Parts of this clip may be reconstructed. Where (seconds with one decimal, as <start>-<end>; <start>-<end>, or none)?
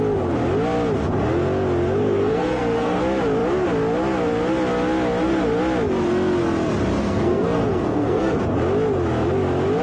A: 2.0-3.0; 7.0-8.4